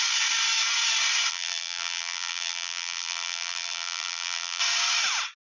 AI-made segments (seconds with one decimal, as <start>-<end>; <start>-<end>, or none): 1.3-4.6